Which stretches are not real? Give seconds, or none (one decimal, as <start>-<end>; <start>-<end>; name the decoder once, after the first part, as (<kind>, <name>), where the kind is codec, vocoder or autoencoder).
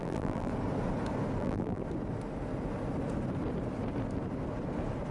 0.0-0.5 (vocoder, BigVGAN v2); 1.4-1.8